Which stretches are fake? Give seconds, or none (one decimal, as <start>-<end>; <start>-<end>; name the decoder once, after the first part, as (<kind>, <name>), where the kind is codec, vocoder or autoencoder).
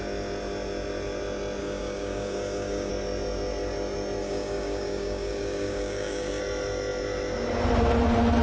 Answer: 1.6-2.9 (codec, DAC); 4.2-6.4